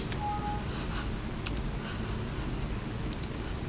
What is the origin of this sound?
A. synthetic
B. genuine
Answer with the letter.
B